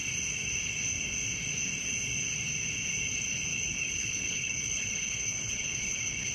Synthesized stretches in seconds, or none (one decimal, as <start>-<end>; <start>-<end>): 3.5-6.3